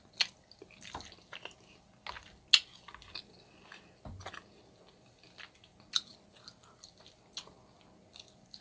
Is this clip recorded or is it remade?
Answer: recorded